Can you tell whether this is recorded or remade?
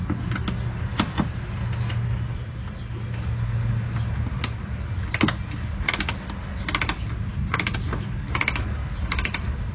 recorded